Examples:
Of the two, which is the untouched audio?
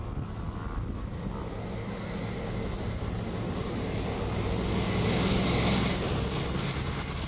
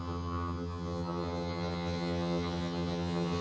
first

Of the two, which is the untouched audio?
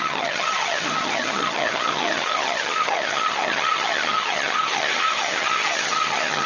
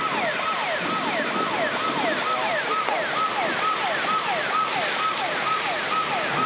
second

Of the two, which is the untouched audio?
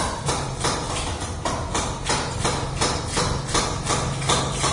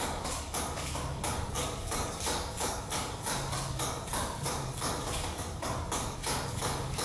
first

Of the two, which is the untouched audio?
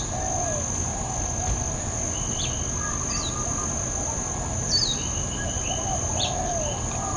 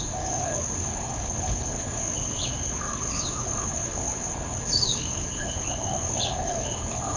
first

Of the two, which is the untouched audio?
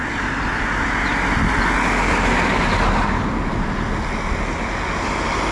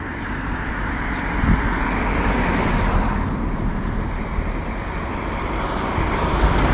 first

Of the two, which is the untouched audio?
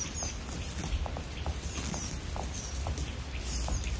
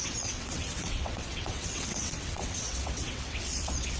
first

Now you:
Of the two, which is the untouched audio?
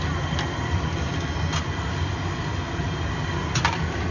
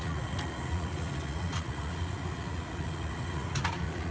first